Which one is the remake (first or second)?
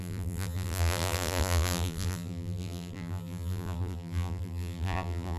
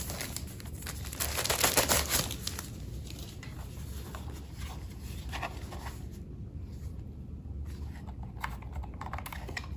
first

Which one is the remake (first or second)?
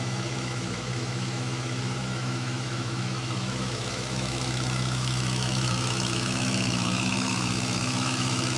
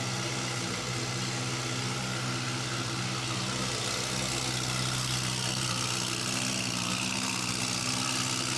first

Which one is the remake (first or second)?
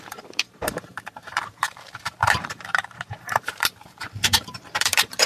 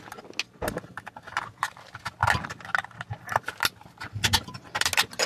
first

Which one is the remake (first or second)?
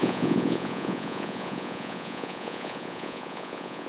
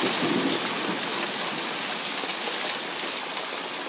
first